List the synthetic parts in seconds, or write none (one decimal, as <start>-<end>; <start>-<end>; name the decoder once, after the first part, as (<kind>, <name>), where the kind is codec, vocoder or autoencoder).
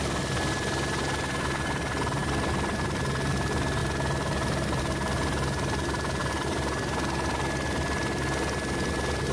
none